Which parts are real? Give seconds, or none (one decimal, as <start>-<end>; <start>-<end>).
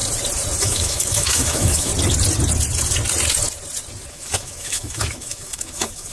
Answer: 0.0-0.6; 1.9-4.1